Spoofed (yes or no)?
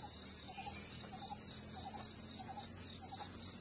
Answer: no